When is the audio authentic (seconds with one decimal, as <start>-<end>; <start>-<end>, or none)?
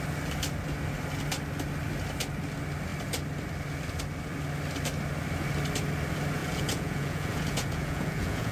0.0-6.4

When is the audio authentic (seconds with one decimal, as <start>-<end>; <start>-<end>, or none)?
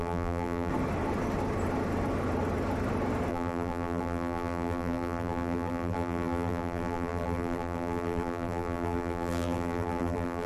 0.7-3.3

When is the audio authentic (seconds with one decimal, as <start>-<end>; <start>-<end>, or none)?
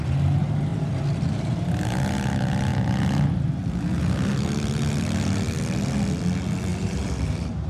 0.0-6.7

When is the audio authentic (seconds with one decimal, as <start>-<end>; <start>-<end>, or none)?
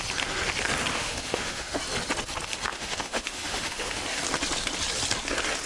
0.0-0.9; 1.8-2.7; 4.0-5.7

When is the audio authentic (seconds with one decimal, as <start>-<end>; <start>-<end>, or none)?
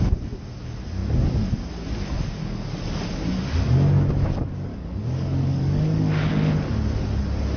0.0-4.7; 6.3-7.6